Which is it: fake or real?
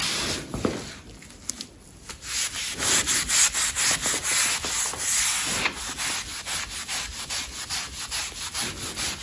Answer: real